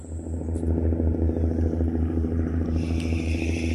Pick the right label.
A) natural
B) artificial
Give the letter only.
B